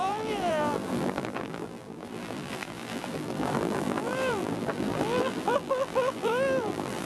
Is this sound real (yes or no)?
no